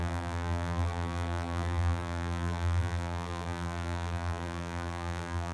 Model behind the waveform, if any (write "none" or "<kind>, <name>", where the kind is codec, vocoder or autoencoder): vocoder, BigVGAN v2